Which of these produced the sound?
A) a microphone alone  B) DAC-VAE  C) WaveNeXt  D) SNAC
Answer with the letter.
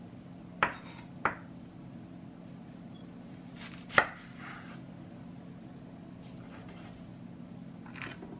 A